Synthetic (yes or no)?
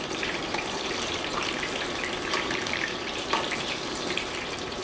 yes